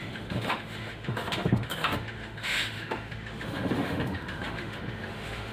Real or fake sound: fake